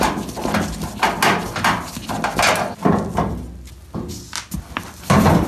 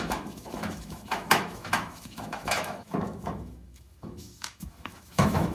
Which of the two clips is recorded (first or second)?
first